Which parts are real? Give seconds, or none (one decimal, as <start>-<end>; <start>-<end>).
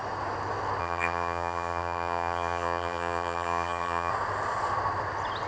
0.0-0.8; 4.1-5.5